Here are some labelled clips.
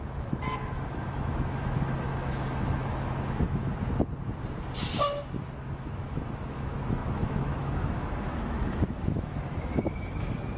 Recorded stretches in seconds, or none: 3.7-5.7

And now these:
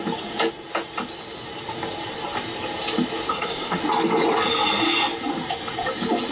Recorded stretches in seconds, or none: 0.0-3.3; 3.8-6.3